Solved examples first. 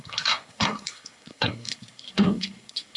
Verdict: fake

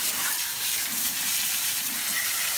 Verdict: fake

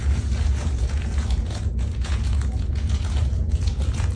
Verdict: fake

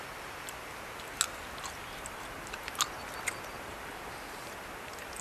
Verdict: real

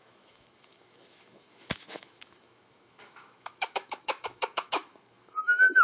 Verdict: fake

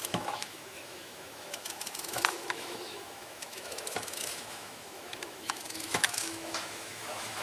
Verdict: fake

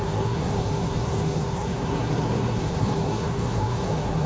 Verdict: fake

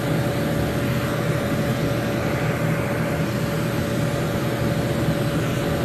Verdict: real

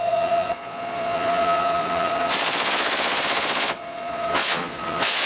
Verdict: fake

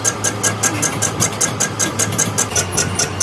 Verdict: real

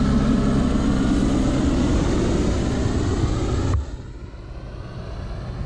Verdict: real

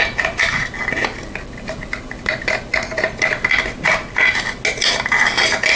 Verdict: real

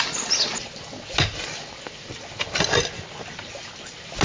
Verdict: real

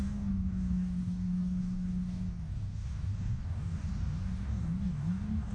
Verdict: fake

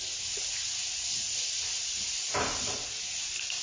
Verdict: real